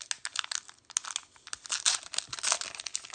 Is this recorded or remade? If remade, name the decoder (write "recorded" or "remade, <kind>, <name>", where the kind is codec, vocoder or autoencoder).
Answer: recorded